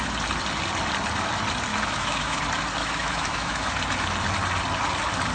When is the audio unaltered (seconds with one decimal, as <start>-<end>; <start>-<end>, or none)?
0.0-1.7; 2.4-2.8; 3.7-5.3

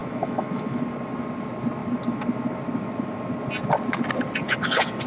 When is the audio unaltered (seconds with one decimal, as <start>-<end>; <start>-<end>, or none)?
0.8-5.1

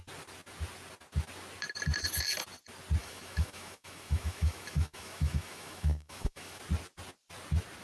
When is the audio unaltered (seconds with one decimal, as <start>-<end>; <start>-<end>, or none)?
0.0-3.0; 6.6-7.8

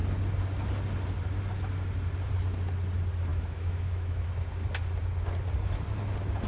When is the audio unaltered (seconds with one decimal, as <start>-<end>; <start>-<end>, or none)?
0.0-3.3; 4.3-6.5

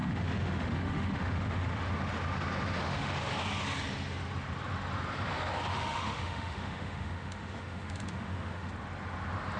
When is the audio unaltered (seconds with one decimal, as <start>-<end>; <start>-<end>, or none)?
1.9-2.8; 3.3-5.7; 8.7-9.6

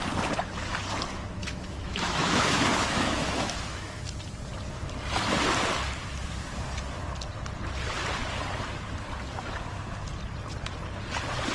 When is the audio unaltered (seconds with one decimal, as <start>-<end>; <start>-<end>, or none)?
0.0-1.4; 4.0-11.5

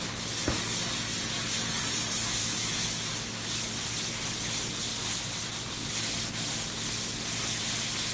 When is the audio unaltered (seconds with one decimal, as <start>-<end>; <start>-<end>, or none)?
0.0-2.4; 3.1-8.1